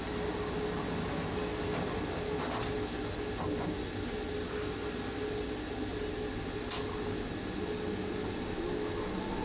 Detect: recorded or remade recorded